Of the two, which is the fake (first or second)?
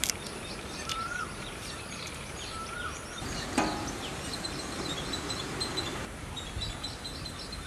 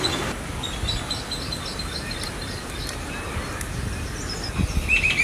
first